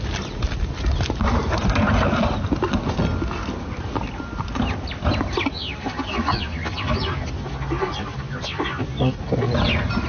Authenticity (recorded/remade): recorded